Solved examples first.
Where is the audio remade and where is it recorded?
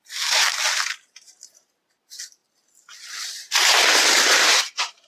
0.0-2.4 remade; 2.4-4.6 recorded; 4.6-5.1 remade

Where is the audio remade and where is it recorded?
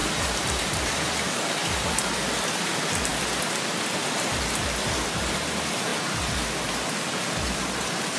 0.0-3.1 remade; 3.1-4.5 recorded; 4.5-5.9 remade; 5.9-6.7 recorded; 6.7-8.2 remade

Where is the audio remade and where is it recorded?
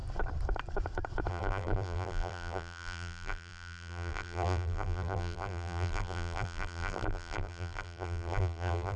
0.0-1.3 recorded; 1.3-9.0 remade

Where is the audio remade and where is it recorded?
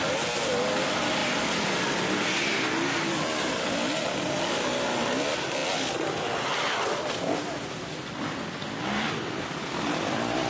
0.0-10.5 recorded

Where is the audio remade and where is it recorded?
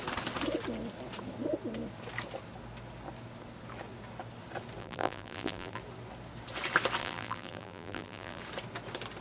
0.0-4.8 recorded; 4.8-5.8 remade; 5.8-7.0 recorded; 7.0-8.4 remade; 8.4-9.2 recorded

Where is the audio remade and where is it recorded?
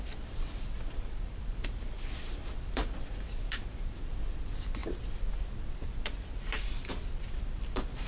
0.0-4.8 remade; 4.8-5.4 recorded; 5.4-8.1 remade